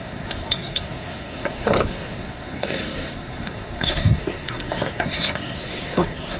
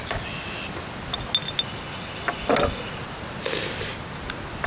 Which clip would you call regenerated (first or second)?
first